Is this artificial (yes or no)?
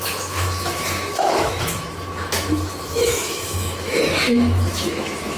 yes